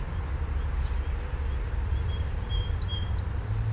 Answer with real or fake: real